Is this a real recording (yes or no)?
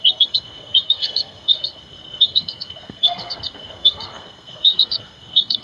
no